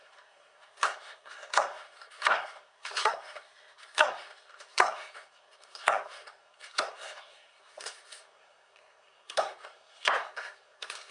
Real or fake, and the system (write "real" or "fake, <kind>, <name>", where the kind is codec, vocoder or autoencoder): fake, codec, SNAC